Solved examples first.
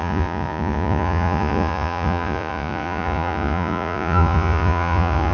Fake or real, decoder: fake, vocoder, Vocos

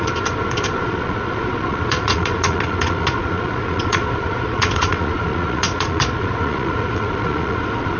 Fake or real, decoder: fake, vocoder, Vocos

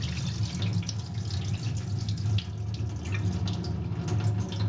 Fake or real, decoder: real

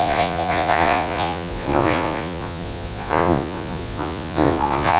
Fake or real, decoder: fake, vocoder, Vocos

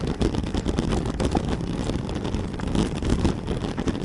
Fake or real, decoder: real